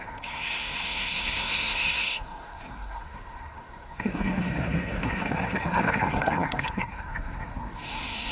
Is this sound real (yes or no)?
no